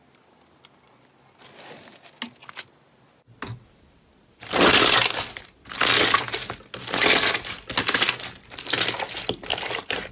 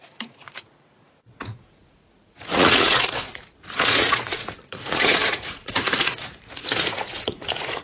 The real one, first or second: first